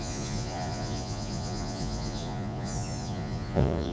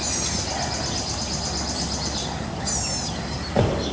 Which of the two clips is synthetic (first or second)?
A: first